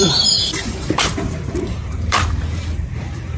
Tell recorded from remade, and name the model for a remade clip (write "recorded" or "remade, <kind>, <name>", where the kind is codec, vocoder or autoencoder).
remade, vocoder, BigVGAN v2